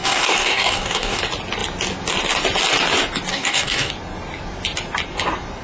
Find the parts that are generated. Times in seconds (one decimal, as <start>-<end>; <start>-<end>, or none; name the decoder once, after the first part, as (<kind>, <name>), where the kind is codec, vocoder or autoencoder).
0.0-1.2 (codec, DAC); 3.3-3.9